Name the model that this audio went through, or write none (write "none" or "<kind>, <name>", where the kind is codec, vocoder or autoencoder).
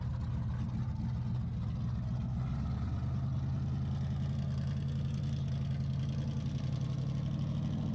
none